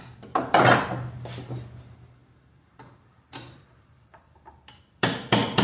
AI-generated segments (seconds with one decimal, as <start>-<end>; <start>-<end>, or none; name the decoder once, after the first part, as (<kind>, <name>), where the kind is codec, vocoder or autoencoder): 2.2-5.6 (vocoder, BigVGAN v2)